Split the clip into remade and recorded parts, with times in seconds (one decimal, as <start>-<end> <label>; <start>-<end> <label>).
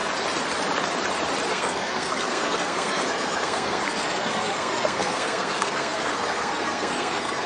0.0-1.5 recorded; 1.5-7.5 remade